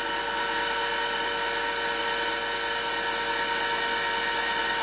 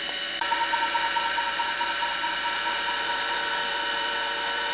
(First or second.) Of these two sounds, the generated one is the second